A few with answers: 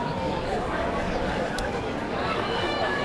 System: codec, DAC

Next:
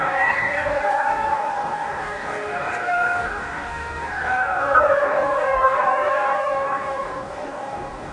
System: codec, DAC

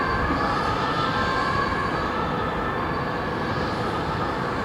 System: none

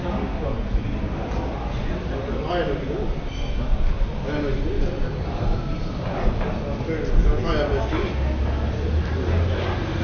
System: none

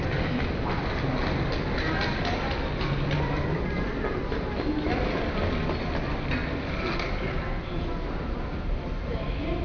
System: none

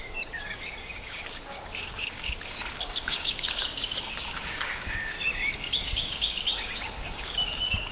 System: codec, DAC